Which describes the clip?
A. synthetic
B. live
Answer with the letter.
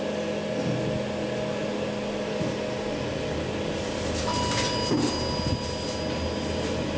B